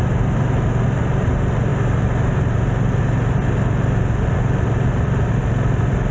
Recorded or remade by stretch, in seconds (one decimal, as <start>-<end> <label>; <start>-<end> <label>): 0.0-6.1 recorded